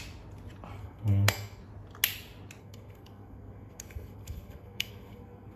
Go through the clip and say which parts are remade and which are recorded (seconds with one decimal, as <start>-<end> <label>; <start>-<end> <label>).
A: 0.0-0.8 recorded; 0.8-1.6 remade; 1.6-2.6 recorded; 2.6-5.6 remade